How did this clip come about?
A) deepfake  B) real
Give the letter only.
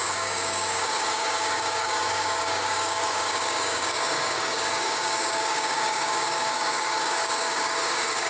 A